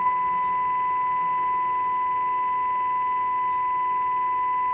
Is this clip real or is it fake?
real